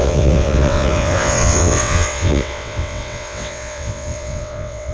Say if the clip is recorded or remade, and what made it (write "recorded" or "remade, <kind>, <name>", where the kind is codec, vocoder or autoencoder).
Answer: remade, vocoder, WaveNeXt